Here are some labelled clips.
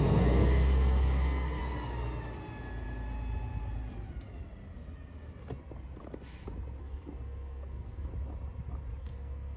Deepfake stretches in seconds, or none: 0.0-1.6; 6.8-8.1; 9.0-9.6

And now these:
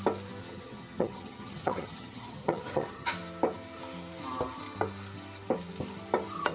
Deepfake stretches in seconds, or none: 0.4-3.1

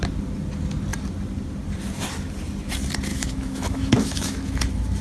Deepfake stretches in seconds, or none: 3.1-4.6

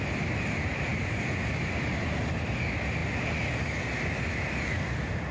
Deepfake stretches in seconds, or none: none

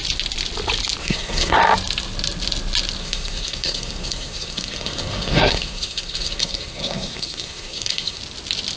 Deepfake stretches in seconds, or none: 1.0-1.6; 3.0-8.2

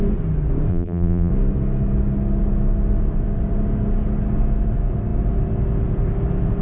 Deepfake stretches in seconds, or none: 0.7-1.3

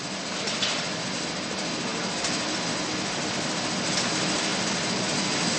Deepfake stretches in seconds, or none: none

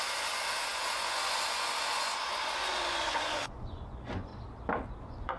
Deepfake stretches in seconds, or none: 0.0-4.3; 5.0-5.4